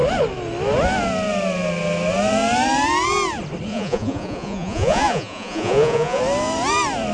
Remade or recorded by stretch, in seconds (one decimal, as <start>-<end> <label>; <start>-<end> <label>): 0.0-3.7 recorded; 3.7-6.2 remade; 6.2-7.1 recorded